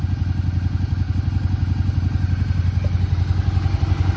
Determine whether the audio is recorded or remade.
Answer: recorded